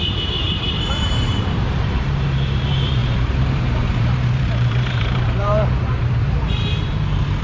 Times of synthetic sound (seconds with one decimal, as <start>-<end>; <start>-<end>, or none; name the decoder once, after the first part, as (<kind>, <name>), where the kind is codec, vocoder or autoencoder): 0.0-7.4 (vocoder, BigVGAN v2)